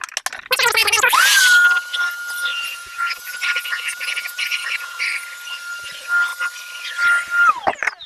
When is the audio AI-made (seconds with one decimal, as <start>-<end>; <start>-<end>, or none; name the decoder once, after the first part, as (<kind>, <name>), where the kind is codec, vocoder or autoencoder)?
0.8-1.4 (vocoder, Vocos); 2.5-5.0